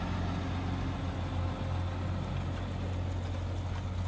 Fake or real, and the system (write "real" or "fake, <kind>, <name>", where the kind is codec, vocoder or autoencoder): real